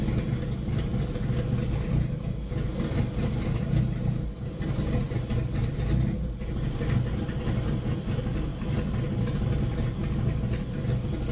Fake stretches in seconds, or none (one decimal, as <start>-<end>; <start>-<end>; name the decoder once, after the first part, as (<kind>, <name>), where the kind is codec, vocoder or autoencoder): none